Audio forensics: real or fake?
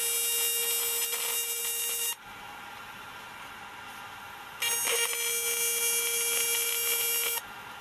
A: real